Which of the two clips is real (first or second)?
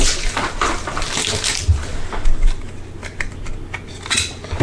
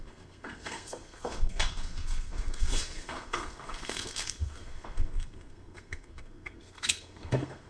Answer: first